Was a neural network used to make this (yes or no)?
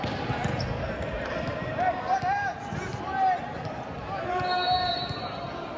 no